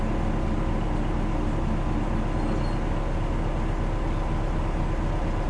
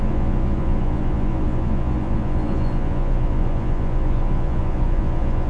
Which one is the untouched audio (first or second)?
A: first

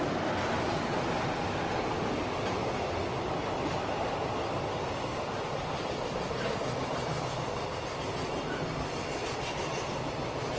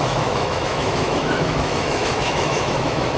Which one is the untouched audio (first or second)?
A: first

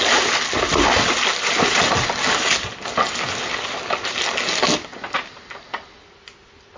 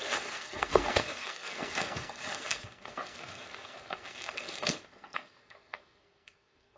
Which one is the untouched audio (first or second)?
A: first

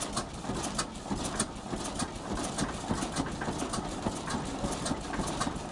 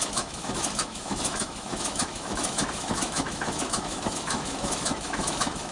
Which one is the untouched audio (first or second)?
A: first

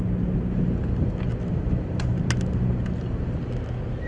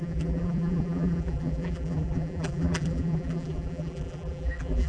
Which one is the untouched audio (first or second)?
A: first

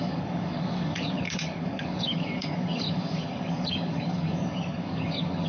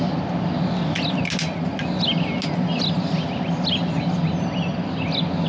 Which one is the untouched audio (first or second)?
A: second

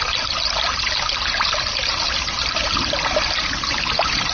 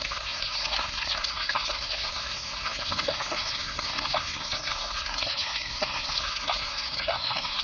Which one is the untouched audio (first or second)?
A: first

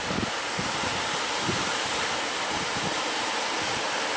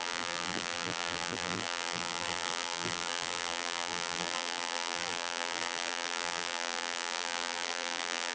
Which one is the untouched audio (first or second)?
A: first